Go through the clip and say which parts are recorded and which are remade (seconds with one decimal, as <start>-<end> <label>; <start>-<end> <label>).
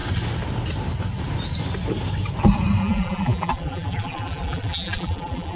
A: 0.0-2.8 recorded; 2.8-5.6 remade